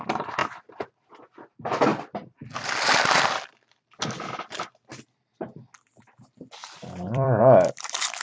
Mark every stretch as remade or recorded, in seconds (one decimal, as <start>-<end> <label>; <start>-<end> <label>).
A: 0.0-1.9 recorded; 1.9-4.0 remade; 4.0-6.6 recorded; 6.6-7.4 remade; 7.4-8.2 recorded